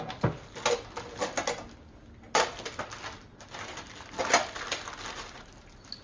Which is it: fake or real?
real